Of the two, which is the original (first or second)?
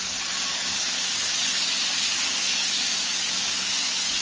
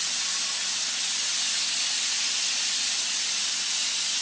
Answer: second